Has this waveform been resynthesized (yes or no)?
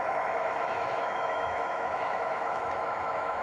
yes